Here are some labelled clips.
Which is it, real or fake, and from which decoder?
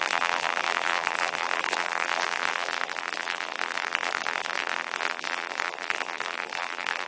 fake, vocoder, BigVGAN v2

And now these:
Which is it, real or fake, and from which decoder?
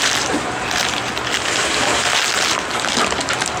real